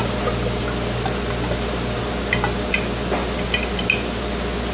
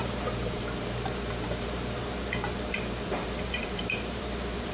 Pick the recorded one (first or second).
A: first